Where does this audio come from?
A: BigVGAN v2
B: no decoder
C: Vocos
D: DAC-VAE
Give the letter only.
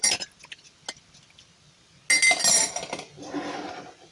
B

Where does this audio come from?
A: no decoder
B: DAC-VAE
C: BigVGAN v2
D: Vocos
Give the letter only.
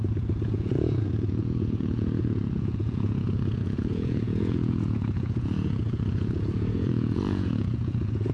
D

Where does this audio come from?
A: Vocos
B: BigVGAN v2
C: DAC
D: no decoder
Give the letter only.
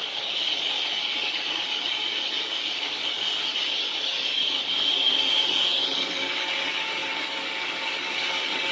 C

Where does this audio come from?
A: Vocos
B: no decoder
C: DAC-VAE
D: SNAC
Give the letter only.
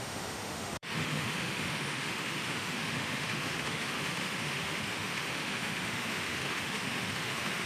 C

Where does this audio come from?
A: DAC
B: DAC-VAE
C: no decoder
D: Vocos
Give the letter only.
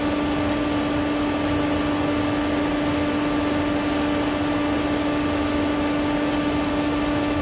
C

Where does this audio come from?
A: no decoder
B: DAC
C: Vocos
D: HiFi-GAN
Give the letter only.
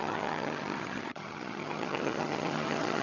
D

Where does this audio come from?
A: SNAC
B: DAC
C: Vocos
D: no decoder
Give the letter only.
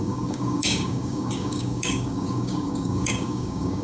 B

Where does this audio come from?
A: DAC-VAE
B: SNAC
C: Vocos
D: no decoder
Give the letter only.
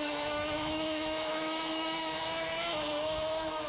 A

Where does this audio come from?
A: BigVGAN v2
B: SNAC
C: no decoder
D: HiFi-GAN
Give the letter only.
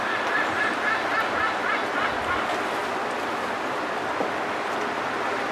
C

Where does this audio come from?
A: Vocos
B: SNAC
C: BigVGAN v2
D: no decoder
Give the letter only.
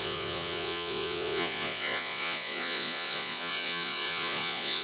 A